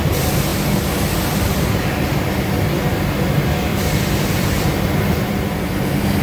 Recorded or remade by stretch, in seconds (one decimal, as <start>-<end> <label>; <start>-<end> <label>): 0.0-3.7 recorded; 3.7-5.3 remade; 5.3-6.2 recorded

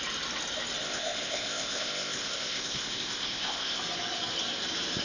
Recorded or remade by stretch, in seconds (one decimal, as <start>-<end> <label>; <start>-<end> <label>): 0.0-0.8 recorded; 0.8-3.8 remade; 3.8-5.0 recorded

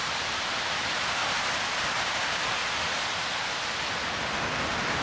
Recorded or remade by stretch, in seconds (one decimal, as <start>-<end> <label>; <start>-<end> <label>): 0.0-1.2 remade; 1.2-1.9 recorded; 1.9-2.6 remade; 2.6-3.9 recorded; 3.9-5.0 remade

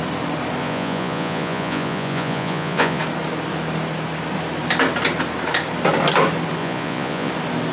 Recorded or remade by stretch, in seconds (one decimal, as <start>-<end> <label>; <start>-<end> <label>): 0.0-0.6 recorded; 0.6-3.0 remade; 3.0-6.6 recorded; 6.6-7.3 remade; 7.3-7.7 recorded

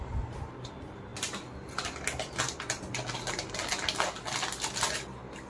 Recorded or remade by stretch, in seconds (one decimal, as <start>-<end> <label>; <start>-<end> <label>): 0.0-5.5 recorded

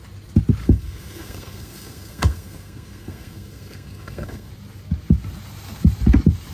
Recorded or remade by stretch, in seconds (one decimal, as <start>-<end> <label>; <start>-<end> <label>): 0.0-0.6 recorded; 0.6-4.5 remade; 4.5-6.5 recorded

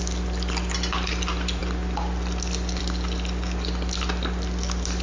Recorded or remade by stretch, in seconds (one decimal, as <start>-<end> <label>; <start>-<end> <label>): 0.0-5.0 recorded